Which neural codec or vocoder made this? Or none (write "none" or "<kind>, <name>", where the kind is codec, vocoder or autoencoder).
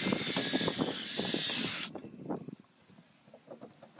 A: none